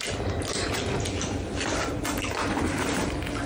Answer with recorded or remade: recorded